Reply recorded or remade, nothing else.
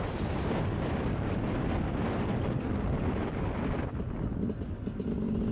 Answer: recorded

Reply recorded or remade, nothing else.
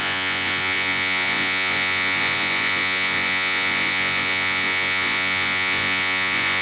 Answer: remade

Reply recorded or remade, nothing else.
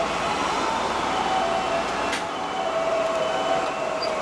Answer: recorded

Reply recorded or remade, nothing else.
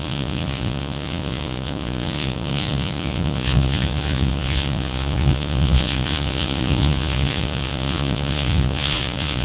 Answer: remade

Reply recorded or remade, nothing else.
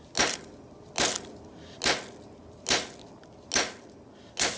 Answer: recorded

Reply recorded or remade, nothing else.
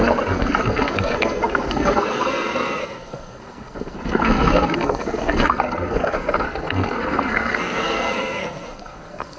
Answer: remade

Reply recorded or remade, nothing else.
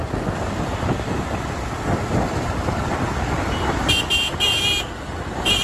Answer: recorded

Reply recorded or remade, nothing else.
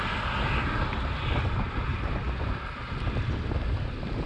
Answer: recorded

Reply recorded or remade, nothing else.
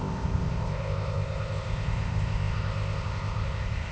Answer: remade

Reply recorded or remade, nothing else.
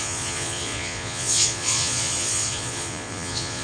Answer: remade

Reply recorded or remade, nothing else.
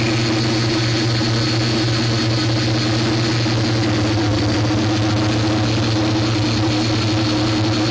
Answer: recorded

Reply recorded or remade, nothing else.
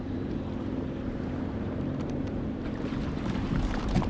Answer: remade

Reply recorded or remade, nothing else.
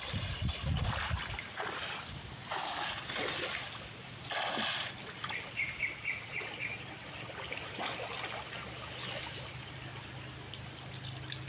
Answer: recorded